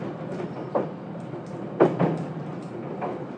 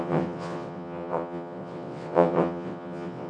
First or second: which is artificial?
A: second